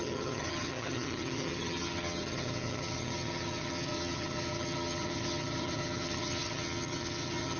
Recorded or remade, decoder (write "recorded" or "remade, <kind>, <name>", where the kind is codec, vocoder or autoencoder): remade, vocoder, HiFi-GAN